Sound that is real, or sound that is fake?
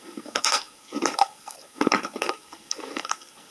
fake